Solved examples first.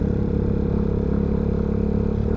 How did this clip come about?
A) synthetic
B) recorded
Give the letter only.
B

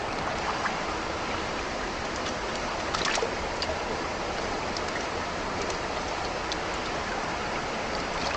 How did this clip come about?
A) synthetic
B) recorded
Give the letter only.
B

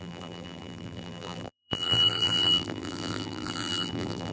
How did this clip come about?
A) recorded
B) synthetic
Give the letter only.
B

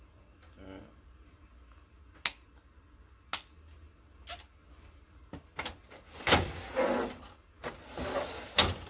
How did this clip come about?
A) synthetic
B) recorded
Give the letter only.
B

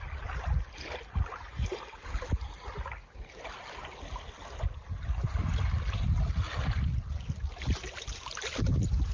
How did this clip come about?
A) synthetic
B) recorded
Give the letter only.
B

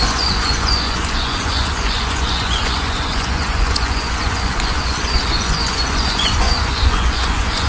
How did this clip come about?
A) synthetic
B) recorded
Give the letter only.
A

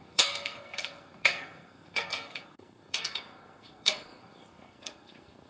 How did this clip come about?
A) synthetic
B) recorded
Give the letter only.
A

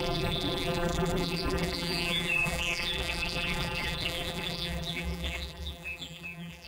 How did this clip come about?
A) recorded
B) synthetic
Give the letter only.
B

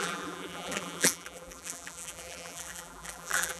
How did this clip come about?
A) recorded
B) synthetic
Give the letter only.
B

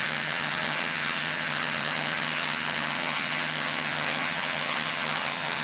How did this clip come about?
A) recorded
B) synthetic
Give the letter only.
B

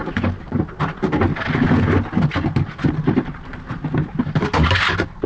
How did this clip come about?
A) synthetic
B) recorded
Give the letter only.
B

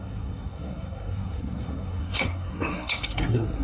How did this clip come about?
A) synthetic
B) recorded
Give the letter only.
A